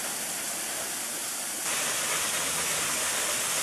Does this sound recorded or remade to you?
recorded